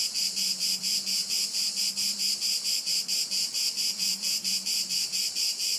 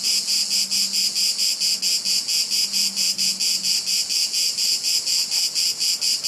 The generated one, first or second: first